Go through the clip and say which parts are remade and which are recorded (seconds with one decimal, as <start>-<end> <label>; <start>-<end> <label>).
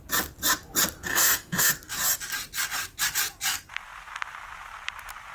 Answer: 0.0-1.1 recorded; 1.1-1.7 remade; 1.7-5.3 recorded